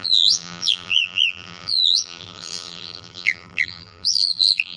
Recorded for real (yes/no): no